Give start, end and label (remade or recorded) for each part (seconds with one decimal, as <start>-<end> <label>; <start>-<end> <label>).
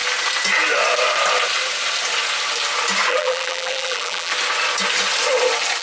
0.0-3.1 recorded; 3.1-4.3 remade; 4.3-5.8 recorded